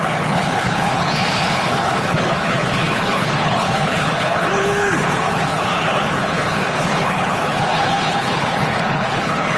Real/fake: fake